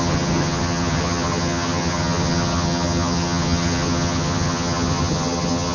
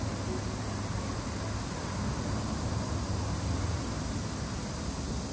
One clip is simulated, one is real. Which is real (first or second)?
second